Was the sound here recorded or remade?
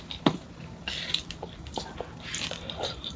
recorded